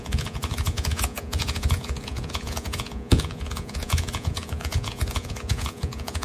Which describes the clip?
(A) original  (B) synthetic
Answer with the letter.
B